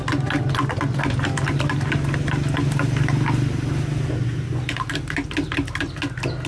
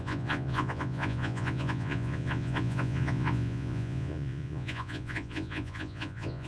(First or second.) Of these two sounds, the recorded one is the first